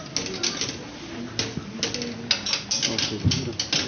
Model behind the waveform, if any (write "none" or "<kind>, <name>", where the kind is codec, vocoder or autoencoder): none